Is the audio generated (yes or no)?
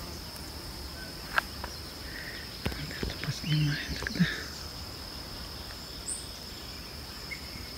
no